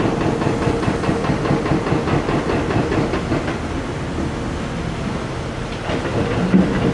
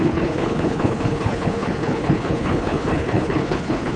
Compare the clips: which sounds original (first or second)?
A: first